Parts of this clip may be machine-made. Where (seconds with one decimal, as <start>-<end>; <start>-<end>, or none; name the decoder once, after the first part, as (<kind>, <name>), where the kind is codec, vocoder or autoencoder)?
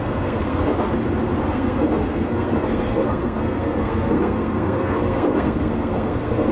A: 0.0-0.7 (codec, SNAC); 1.5-6.5